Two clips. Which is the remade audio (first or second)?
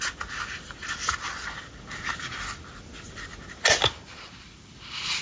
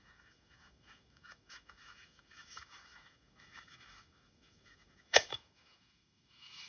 second